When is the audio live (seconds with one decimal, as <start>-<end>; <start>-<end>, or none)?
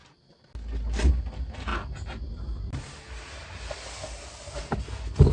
0.0-5.3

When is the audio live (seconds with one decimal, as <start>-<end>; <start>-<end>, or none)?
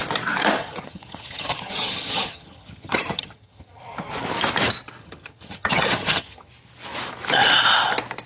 0.0-0.6; 3.8-5.0; 6.5-8.3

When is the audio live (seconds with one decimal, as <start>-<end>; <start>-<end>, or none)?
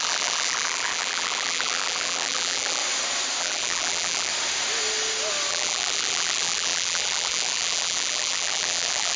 2.8-3.4; 4.3-5.5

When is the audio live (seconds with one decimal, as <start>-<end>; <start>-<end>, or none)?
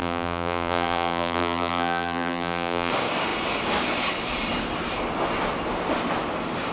2.9-6.7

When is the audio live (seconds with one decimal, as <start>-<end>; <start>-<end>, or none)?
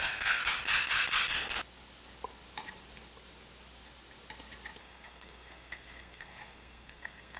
0.4-4.8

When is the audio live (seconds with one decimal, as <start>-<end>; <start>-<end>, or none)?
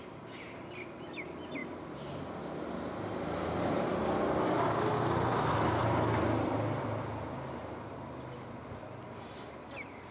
0.0-10.1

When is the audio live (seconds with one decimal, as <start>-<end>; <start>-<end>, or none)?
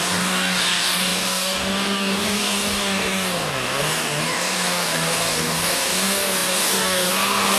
none